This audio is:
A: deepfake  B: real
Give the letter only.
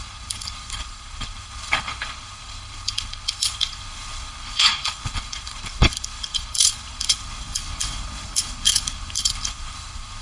A